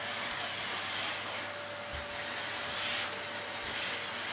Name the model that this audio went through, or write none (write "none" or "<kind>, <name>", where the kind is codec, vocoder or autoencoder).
none